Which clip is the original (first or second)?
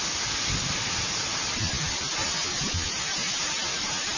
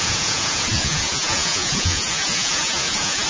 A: first